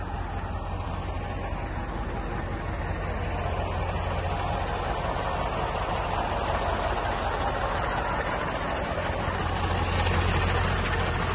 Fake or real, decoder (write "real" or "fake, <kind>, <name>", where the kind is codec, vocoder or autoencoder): real